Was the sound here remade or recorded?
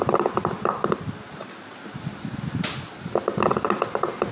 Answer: recorded